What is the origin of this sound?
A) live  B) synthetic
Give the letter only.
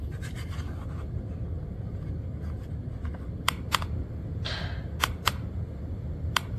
A